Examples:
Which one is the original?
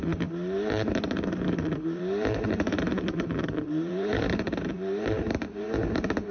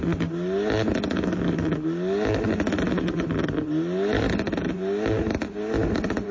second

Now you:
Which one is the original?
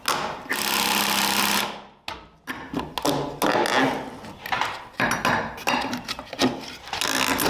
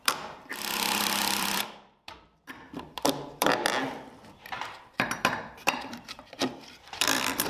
first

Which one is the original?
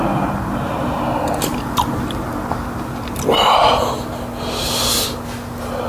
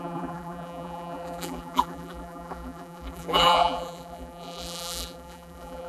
first